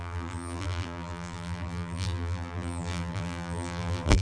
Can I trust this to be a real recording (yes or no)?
no